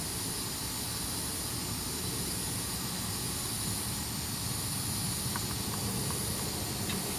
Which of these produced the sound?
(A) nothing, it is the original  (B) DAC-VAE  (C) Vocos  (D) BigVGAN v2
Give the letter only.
A